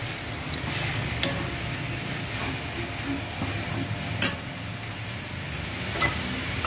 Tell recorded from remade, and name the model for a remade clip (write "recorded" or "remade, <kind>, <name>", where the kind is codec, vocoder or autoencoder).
recorded